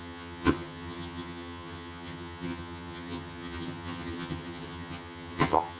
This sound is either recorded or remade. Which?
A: remade